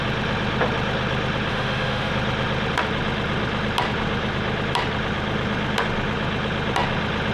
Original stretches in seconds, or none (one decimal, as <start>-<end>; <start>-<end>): 0.0-1.5; 2.1-7.3